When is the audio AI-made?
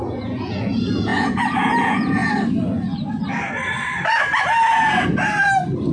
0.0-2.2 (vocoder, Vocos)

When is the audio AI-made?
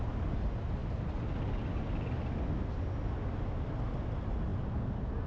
none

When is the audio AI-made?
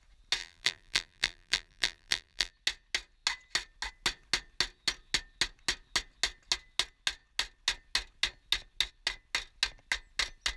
0.4-2.5 (vocoder, BigVGAN v2)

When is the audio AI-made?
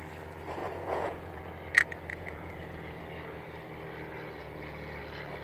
0.6-1.5 (vocoder, Vocos); 2.1-3.0; 4.4-5.0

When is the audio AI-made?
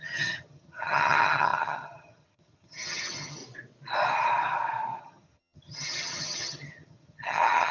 0.0-3.4 (vocoder, HiFi-GAN); 5.0-7.7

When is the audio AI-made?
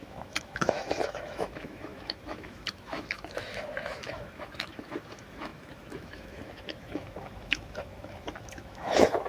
0.0-9.3 (autoencoder, DAC-VAE)